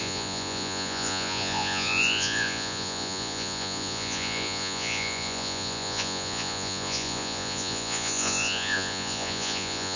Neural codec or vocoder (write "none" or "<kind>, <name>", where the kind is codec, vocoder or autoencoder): vocoder, Vocos